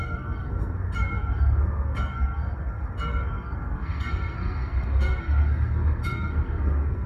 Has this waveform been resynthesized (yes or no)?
yes